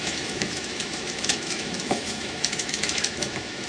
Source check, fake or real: fake